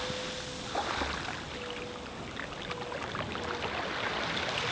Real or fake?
real